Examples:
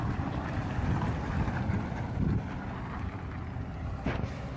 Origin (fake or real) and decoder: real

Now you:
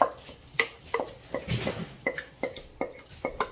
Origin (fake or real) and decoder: real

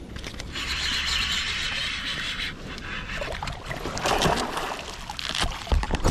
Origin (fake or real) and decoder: fake, vocoder, BigVGAN v2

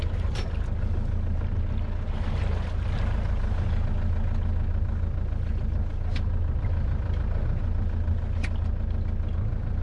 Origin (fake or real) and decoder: real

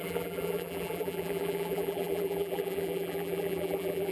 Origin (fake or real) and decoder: fake, vocoder, BigVGAN v2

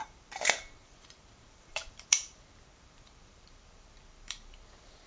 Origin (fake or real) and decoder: fake, vocoder, BigVGAN v2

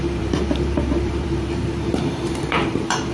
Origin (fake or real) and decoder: fake, vocoder, BigVGAN v2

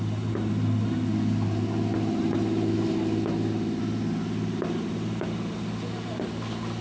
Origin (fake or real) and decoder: real